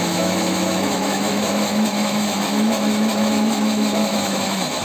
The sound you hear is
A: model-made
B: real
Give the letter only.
A